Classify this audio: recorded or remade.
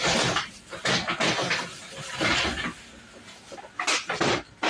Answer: recorded